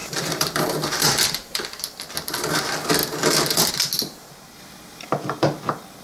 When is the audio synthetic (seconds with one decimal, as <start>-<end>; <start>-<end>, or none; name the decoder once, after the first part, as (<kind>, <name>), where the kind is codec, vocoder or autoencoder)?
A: 0.0-1.8 (vocoder, BigVGAN v2)